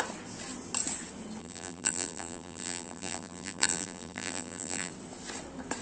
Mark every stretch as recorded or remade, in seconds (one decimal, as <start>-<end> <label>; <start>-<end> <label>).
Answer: 0.0-1.4 recorded; 1.4-4.9 remade; 4.9-5.8 recorded